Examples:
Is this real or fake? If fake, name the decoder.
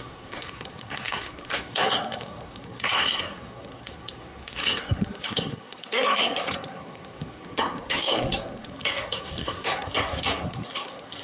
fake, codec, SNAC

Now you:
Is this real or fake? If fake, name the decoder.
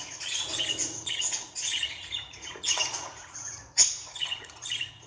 fake, vocoder, Vocos